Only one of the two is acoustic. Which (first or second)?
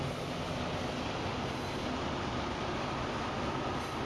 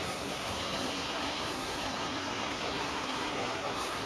first